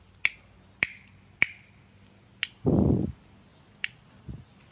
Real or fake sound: real